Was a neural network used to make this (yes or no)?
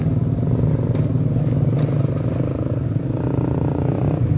no